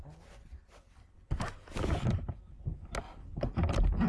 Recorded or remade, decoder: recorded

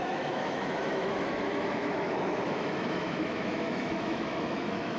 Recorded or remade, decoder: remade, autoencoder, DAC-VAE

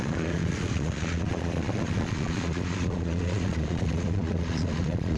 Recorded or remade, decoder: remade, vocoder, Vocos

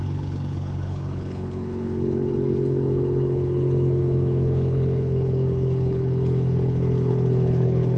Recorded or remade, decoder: remade, codec, HILCodec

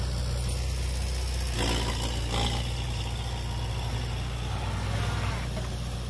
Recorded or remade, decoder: recorded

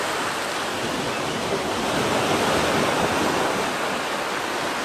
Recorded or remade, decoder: recorded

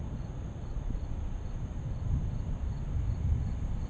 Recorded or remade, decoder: recorded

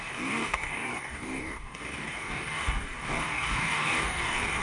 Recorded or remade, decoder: remade, codec, DAC